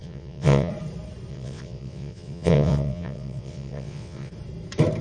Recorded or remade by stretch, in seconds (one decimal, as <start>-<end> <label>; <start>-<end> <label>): 0.0-0.7 remade; 0.7-1.3 recorded; 1.3-4.3 remade; 4.3-5.0 recorded